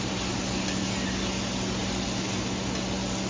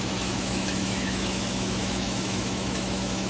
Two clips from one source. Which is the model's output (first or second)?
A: second